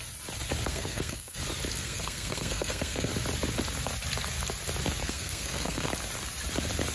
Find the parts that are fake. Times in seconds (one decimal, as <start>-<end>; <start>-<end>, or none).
0.7-1.4; 1.8-3.1; 5.0-5.9